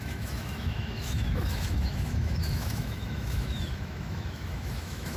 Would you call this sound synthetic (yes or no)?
yes